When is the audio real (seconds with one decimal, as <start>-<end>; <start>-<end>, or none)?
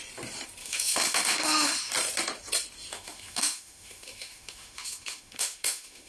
0.0-0.6; 1.9-2.9